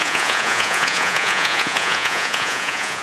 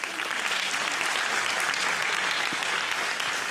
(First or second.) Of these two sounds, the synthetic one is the first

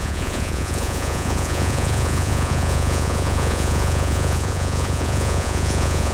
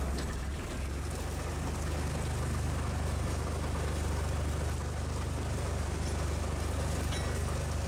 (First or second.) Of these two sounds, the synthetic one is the first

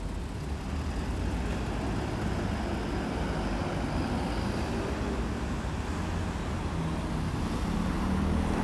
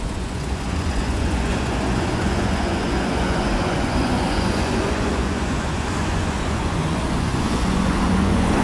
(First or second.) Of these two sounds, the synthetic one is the second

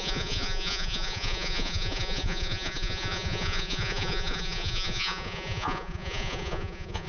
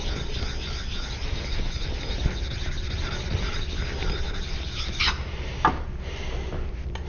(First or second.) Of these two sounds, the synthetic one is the first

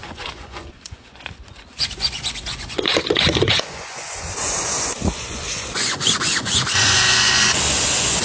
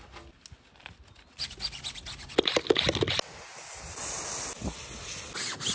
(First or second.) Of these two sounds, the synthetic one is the first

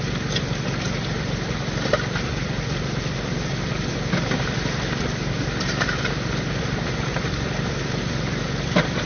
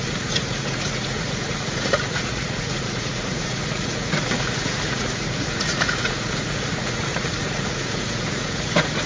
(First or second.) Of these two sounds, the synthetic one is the second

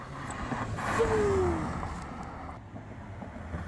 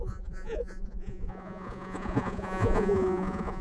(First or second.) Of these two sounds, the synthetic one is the second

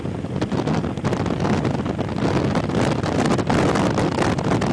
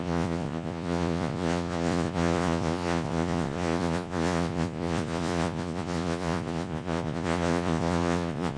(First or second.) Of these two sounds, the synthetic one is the second